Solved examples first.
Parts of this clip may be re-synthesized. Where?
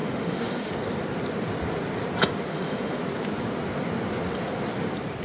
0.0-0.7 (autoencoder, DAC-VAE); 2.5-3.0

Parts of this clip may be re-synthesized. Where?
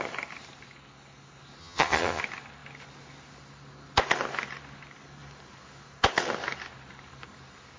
1.6-2.2 (vocoder, HiFi-GAN)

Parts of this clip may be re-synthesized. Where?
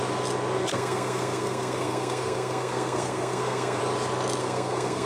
0.7-3.8 (codec, SNAC); 4.4-5.1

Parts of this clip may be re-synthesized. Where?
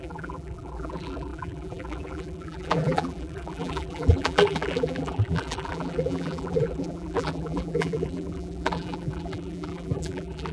0.0-10.5 (vocoder, BigVGAN v2)